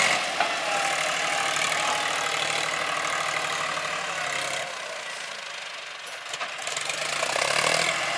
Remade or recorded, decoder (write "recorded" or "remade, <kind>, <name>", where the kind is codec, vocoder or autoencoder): recorded